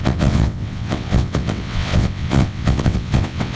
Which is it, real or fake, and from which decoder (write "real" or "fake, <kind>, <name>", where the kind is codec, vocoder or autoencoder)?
fake, vocoder, WaveNeXt